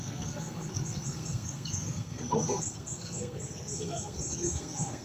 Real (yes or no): no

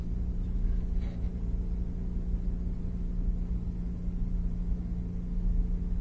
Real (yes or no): yes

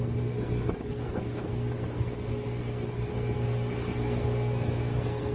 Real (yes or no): no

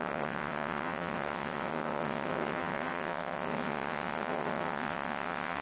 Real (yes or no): no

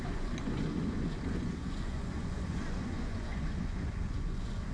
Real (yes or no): no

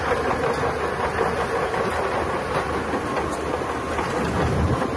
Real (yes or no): yes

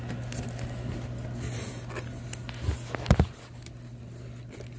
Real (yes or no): yes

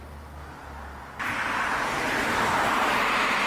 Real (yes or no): yes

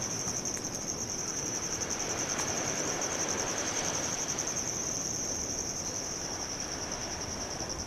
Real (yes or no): no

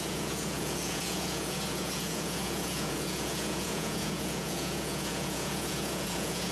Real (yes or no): no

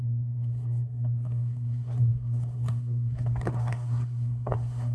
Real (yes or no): no